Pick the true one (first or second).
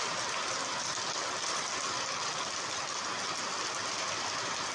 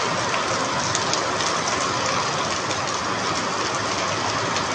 second